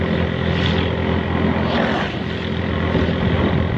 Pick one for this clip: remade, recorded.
recorded